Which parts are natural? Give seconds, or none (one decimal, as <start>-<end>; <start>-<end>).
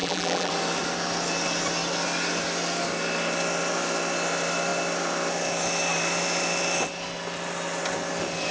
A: 0.5-8.5